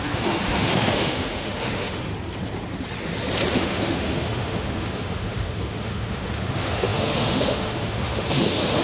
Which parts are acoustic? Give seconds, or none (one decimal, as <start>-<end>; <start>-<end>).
2.1-3.5